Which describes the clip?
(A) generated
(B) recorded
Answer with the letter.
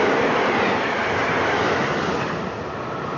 B